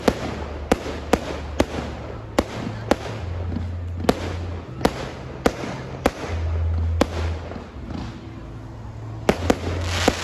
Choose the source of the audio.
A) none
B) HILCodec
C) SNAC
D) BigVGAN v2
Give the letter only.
A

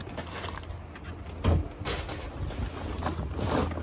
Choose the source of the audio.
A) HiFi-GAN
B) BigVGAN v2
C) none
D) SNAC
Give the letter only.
C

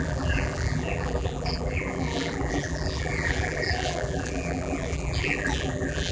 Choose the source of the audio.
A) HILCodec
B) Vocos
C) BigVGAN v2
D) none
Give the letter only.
C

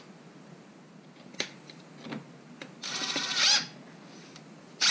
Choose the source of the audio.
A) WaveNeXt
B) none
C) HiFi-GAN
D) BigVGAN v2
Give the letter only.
B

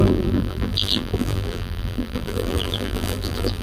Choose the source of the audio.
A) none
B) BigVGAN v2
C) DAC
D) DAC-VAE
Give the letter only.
B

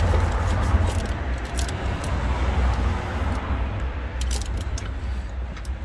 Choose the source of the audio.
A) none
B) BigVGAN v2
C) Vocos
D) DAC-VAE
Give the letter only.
A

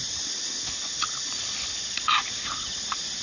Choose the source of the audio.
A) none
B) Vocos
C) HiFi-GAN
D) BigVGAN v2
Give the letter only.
D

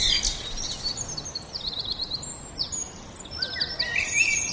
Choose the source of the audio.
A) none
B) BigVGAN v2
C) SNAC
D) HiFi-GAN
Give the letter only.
A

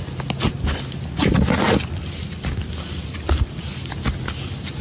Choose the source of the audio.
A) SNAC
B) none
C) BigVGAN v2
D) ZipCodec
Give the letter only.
B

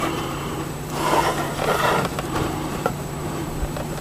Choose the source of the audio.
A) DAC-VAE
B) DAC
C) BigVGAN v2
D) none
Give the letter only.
C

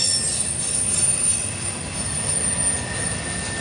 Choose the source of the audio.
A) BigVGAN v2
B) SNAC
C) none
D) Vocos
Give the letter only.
C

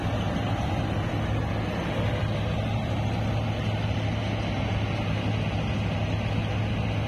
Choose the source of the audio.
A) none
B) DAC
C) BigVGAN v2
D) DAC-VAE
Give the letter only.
A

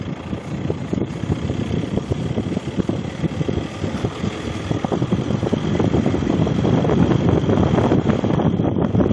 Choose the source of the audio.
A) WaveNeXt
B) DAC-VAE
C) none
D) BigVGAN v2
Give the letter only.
D